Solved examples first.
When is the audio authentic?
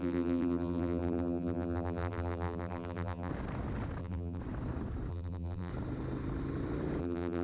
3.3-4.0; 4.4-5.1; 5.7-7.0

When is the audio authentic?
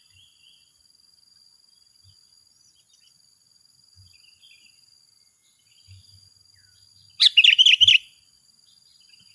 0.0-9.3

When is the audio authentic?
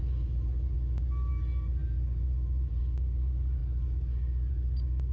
0.0-5.1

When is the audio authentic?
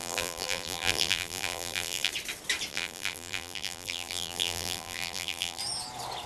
2.1-2.7; 5.6-6.3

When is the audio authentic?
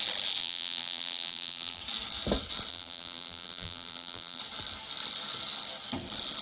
0.0-0.4; 1.8-2.7; 4.4-6.4